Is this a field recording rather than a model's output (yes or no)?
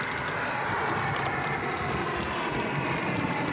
yes